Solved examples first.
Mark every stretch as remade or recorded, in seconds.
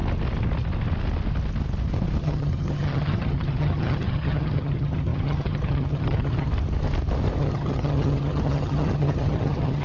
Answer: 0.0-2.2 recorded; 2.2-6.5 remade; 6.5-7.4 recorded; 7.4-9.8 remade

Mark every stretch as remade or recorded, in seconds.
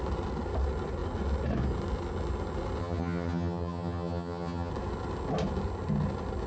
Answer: 0.0-2.8 recorded; 2.8-4.7 remade; 4.7-6.5 recorded